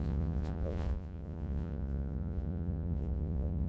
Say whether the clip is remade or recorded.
remade